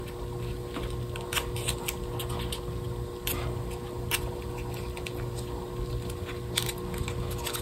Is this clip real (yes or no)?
yes